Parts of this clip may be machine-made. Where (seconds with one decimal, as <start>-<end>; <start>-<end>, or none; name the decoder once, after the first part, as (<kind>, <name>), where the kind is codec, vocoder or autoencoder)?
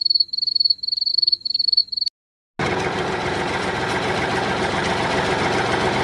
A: 1.1-1.8 (vocoder, BigVGAN v2)